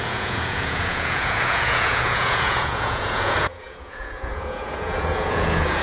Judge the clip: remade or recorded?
remade